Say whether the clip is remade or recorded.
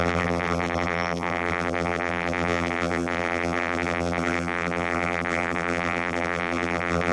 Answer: remade